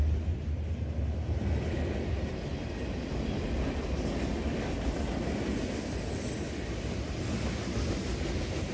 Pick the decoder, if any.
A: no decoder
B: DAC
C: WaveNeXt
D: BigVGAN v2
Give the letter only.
A